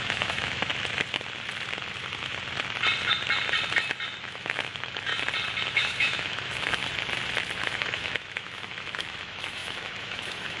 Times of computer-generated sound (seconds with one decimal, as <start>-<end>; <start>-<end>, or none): 0.0-0.7; 4.2-5.1; 5.7-6.8; 7.6-10.6